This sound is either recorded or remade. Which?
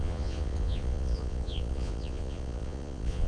remade